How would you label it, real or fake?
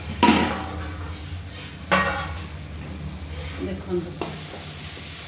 real